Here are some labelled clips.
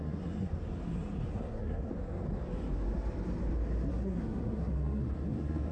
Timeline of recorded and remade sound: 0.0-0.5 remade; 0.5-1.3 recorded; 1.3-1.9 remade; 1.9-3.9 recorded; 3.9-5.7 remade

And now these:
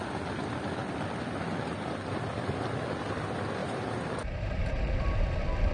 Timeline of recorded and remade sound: 0.0-3.6 recorded; 3.6-4.6 remade; 4.6-5.7 recorded